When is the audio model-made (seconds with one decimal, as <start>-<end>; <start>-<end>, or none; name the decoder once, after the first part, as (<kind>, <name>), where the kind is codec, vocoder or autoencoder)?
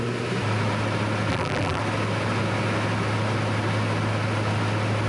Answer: 1.3-1.8 (vocoder, BigVGAN v2)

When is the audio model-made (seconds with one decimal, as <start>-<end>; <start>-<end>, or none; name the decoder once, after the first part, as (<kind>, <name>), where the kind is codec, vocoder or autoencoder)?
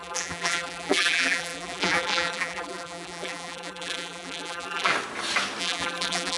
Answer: 0.0-4.9 (vocoder, BigVGAN v2); 5.6-6.4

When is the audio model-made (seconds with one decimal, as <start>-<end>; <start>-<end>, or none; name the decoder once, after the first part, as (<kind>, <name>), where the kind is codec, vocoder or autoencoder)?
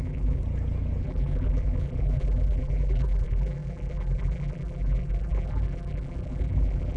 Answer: 0.0-0.4 (vocoder, BigVGAN v2); 1.0-7.0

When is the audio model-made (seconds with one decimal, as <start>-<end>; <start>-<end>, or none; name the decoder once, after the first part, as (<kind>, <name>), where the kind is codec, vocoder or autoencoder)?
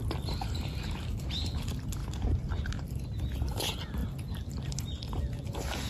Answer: 2.0-2.7 (vocoder, BigVGAN v2)